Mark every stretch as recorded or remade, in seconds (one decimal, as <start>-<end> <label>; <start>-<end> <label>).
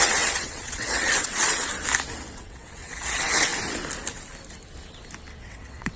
0.0-1.7 remade; 1.7-2.3 recorded; 2.3-3.5 remade; 3.5-5.4 recorded; 5.4-6.0 remade